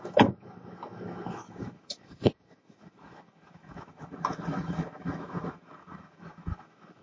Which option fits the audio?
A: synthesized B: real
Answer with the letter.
A